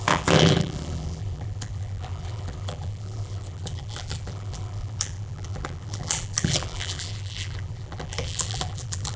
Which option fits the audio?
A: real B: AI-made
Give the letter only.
B